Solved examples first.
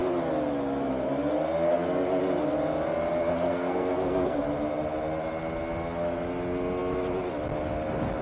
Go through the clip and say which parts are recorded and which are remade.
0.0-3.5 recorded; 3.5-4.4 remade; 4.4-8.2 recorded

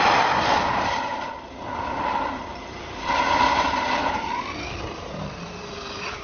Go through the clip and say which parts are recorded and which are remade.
0.0-6.2 recorded

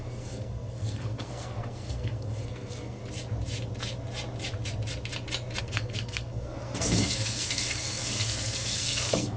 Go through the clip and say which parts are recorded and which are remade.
0.0-3.0 remade; 3.0-5.6 recorded; 5.6-9.4 remade

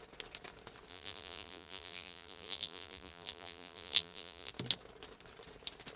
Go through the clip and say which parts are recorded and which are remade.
0.0-0.9 recorded; 0.9-4.5 remade; 4.5-6.0 recorded

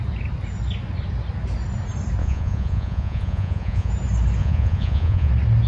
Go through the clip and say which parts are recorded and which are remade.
0.0-2.2 recorded; 2.2-3.9 remade; 3.9-4.4 recorded; 4.4-5.3 remade; 5.3-5.7 recorded

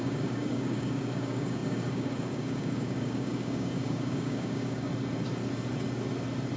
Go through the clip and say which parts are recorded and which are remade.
0.0-4.9 remade; 4.9-6.6 recorded

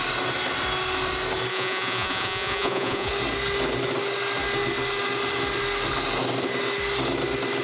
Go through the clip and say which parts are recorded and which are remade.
0.0-1.5 recorded; 1.5-3.1 remade; 3.1-7.6 recorded